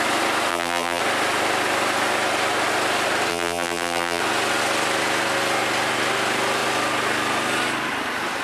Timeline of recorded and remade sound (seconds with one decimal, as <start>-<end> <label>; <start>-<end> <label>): 0.0-0.5 recorded; 0.5-1.0 remade; 1.0-3.3 recorded; 3.3-4.2 remade; 4.2-8.4 recorded